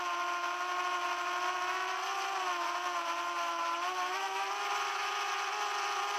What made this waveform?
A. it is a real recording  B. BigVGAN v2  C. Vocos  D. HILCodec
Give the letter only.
A